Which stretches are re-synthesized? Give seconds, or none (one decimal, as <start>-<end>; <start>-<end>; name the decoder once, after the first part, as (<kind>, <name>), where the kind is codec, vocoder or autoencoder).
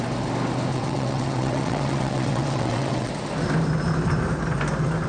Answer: 0.7-3.1 (vocoder, WaveNeXt)